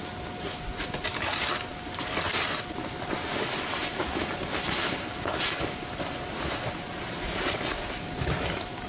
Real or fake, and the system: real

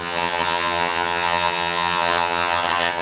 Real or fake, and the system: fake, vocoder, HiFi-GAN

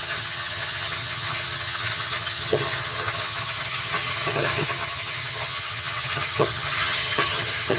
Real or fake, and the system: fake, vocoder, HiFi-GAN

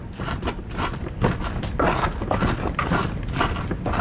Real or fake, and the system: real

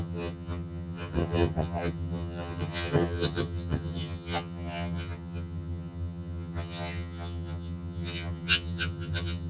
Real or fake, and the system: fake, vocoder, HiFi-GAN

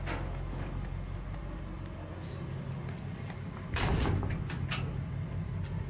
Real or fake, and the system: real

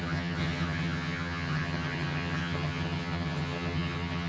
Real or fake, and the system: fake, vocoder, HiFi-GAN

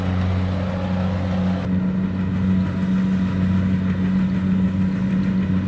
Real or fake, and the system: real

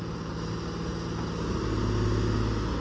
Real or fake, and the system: real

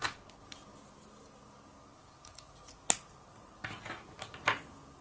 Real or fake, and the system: real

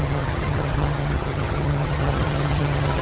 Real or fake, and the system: fake, vocoder, HiFi-GAN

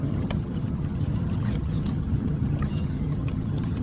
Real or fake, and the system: fake, vocoder, HiFi-GAN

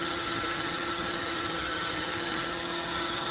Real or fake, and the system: fake, vocoder, HiFi-GAN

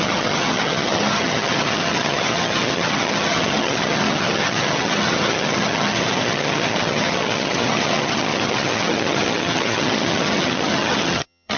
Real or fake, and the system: fake, vocoder, HiFi-GAN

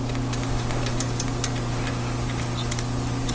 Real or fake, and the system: real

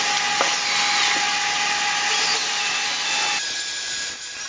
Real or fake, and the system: real